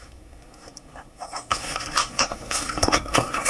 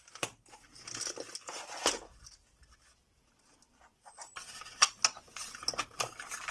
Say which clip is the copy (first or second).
first